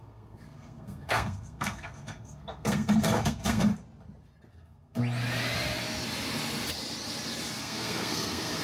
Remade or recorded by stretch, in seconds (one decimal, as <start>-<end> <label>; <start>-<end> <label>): 0.0-3.7 remade; 3.7-4.5 recorded; 4.5-5.0 remade; 5.0-7.6 recorded; 7.6-8.6 remade